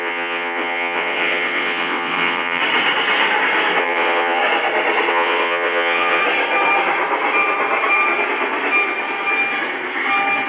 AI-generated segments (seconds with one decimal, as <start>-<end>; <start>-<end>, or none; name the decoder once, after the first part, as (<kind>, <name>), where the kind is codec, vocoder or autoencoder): 0.0-2.6 (vocoder, WaveNeXt); 3.8-4.4; 5.1-6.2